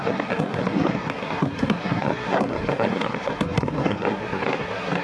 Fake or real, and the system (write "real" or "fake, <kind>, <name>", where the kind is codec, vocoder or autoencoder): fake, codec, SNAC